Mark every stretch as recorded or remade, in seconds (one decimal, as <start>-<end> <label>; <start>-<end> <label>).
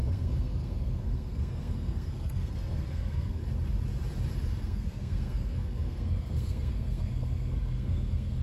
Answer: 0.0-3.4 remade; 3.4-4.6 recorded; 4.6-8.4 remade